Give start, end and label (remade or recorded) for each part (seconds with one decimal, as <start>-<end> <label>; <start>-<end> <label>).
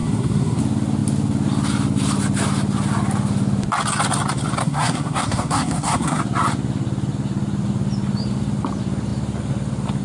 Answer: 0.0-0.6 remade; 0.6-4.6 recorded; 4.6-6.2 remade; 6.2-10.0 recorded